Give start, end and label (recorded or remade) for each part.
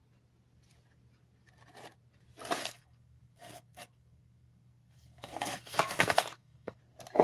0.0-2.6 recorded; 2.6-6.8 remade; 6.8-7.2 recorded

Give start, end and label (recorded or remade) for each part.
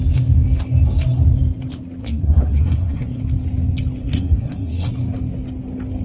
0.0-2.0 recorded; 2.0-3.2 remade; 3.2-4.0 recorded; 4.0-4.9 remade; 4.9-6.0 recorded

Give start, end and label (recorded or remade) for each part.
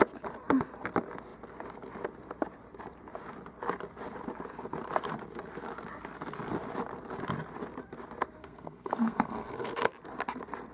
0.0-8.4 recorded; 8.4-9.9 remade; 9.9-10.7 recorded